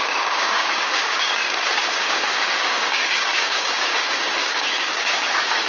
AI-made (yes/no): yes